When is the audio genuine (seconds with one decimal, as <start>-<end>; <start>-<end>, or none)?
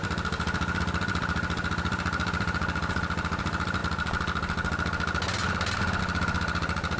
3.8-6.0